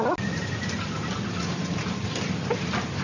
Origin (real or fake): real